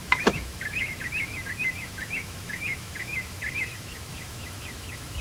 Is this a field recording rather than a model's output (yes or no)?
no